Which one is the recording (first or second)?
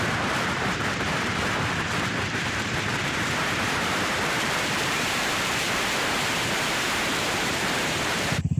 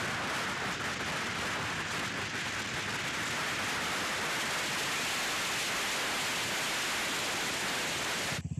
second